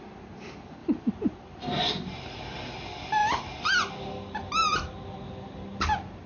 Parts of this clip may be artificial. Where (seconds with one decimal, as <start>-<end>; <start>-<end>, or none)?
0.8-2.4

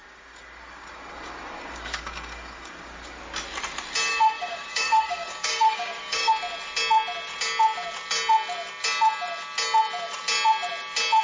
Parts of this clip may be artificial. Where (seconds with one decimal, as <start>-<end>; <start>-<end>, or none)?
0.0-3.2; 4.1-6.3

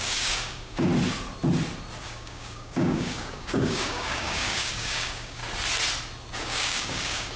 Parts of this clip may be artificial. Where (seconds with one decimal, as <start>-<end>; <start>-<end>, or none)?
0.0-0.9; 2.0-5.4; 6.4-7.4

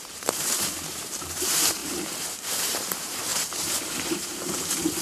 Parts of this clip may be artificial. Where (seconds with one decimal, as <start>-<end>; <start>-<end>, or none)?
0.0-5.0

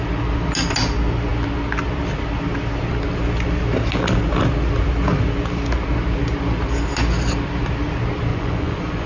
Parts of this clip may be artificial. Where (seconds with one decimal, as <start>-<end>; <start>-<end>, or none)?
8.3-9.1

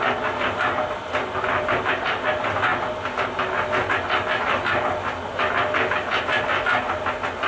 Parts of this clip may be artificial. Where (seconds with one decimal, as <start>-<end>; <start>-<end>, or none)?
none

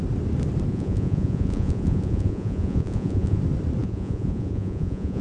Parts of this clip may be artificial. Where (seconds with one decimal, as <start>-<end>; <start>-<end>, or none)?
0.7-3.4; 3.8-5.2